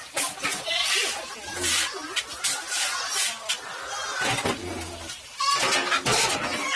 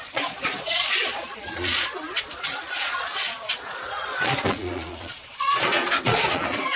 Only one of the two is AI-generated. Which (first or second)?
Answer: second